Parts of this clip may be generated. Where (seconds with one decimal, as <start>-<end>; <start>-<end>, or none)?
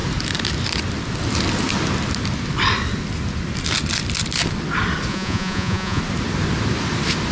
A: 5.1-6.0